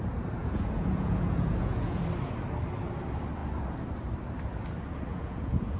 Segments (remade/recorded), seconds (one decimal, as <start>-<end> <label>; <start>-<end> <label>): 0.0-0.4 recorded; 0.4-2.0 remade; 2.0-5.1 recorded; 5.1-5.8 remade